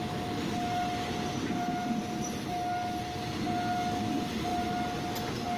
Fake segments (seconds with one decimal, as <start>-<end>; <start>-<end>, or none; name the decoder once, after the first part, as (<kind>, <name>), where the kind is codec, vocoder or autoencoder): none

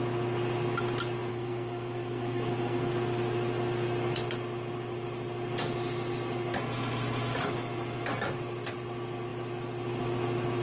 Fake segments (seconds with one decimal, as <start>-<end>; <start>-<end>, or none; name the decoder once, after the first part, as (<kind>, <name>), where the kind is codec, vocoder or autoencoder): 1.3-2.9 (codec, SNAC)